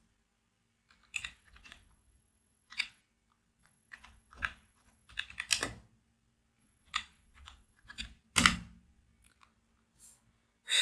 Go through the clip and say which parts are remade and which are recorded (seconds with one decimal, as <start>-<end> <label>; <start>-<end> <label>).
0.0-1.2 recorded; 1.2-3.0 remade; 3.0-3.6 recorded; 3.6-5.1 remade; 5.1-6.6 recorded; 6.6-8.0 remade; 8.0-10.8 recorded